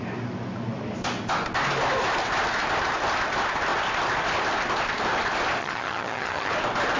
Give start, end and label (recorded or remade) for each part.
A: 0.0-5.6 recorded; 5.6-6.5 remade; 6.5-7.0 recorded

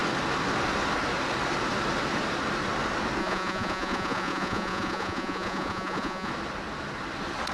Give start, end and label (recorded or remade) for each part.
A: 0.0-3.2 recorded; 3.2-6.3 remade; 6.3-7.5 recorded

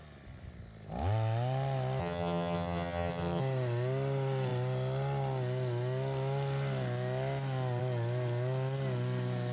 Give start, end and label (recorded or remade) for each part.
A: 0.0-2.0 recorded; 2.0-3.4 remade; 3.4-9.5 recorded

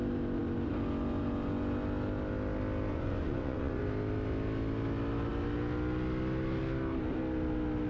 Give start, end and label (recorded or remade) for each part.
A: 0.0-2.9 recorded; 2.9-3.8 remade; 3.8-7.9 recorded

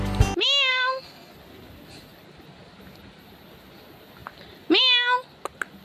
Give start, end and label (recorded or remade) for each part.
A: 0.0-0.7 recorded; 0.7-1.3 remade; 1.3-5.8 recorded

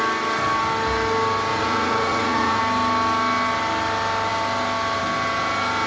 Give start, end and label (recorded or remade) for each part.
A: 0.0-1.5 recorded; 1.5-2.6 remade; 2.6-5.9 recorded

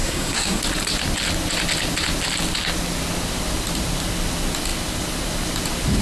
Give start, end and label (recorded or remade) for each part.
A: 0.0-0.6 remade; 0.6-6.0 recorded

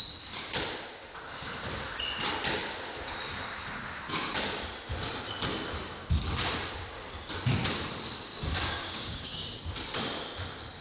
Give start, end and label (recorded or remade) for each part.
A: 0.0-8.3 recorded; 8.3-9.6 remade; 9.6-10.8 recorded